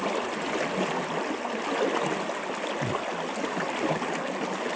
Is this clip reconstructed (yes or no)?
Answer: no